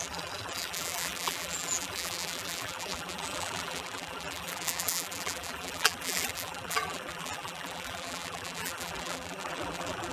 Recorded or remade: remade